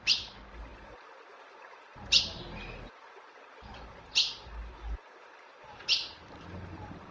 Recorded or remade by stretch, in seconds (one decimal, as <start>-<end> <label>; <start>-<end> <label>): 0.0-7.1 recorded